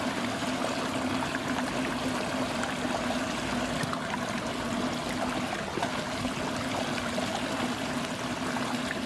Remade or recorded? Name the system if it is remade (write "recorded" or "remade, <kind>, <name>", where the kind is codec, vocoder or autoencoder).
recorded